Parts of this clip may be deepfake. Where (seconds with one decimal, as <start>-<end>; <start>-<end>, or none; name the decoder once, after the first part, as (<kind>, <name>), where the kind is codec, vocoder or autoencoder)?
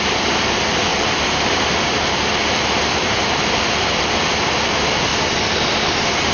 0.9-3.7 (vocoder, BigVGAN v2)